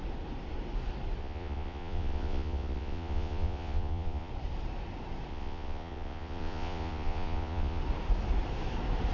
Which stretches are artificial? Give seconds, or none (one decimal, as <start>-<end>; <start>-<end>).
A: 1.2-4.3; 5.3-7.8